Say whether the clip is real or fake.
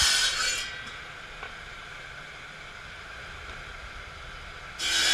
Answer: fake